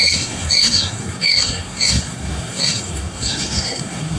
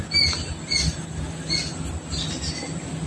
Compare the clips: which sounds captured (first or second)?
second